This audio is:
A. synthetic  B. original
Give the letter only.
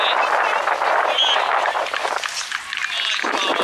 B